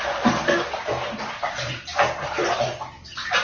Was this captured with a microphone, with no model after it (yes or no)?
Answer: yes